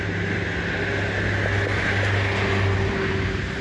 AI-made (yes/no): no